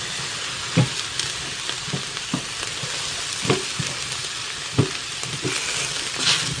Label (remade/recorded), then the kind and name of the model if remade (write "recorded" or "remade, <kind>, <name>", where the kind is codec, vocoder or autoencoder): recorded